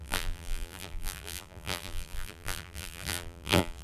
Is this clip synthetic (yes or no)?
yes